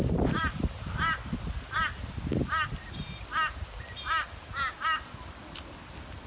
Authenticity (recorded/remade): recorded